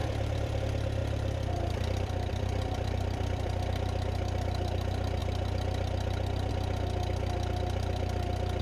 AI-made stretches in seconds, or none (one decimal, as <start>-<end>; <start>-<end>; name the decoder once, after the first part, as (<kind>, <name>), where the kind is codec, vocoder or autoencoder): 0.0-0.6 (vocoder, BigVGAN v2); 1.0-3.5